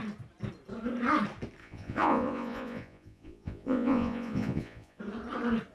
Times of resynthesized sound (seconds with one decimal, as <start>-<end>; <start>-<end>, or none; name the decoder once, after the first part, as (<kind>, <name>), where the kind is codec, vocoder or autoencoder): 1.6-5.0 (vocoder, Vocos)